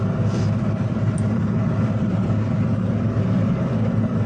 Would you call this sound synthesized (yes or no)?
no